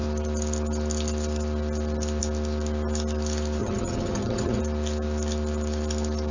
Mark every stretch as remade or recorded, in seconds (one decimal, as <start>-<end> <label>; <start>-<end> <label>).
0.0-3.6 recorded; 3.6-4.6 remade; 4.6-6.3 recorded